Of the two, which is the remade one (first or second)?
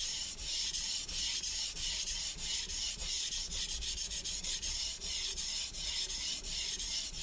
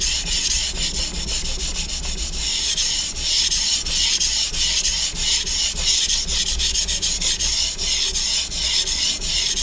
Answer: first